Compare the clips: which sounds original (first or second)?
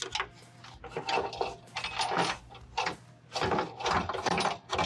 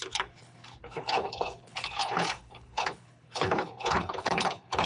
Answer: first